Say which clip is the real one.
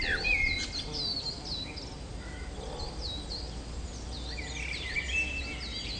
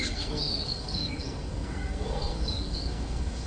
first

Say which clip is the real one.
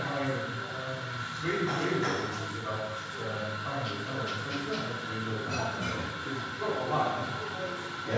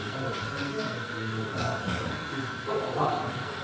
first